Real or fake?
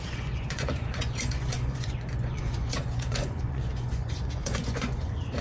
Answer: fake